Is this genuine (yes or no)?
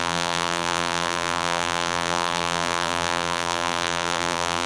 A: no